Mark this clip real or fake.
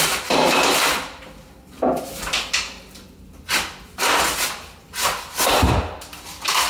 real